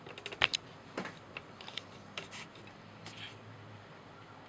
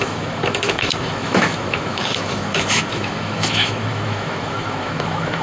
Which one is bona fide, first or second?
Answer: first